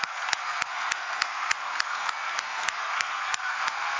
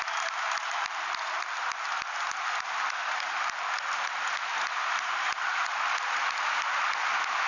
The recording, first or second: second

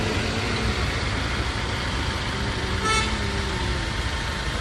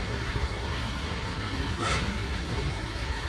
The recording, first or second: first